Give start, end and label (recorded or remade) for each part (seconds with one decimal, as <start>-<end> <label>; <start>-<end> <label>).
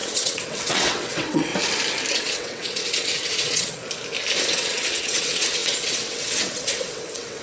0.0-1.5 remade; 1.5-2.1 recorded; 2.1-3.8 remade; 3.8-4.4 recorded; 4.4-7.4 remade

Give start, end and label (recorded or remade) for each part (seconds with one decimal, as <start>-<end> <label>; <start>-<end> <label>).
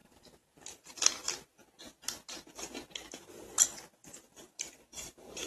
0.0-0.9 remade; 0.9-4.0 recorded; 4.0-5.5 remade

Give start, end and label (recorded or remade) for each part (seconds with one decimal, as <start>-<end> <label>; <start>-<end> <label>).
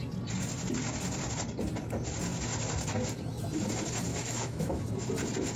0.0-4.1 recorded; 4.1-4.8 remade; 4.8-5.6 recorded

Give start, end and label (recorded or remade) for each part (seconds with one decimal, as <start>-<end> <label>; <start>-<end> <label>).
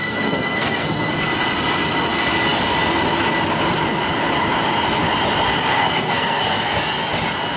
0.0-1.1 remade; 1.1-5.7 recorded; 5.7-6.4 remade; 6.4-7.6 recorded